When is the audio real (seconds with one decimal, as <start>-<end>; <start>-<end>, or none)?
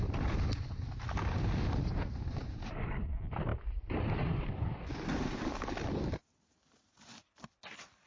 0.0-8.1